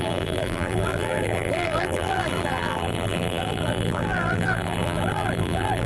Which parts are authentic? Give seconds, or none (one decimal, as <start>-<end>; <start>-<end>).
none